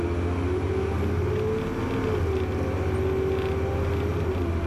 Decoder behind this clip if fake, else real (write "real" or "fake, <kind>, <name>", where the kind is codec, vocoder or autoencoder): real